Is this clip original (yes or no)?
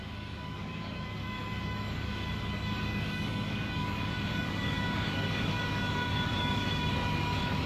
no